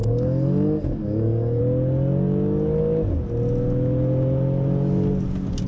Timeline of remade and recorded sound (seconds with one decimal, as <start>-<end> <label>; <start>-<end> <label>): 0.0-1.6 remade; 1.6-5.7 recorded